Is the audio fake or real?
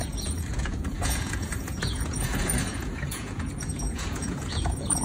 fake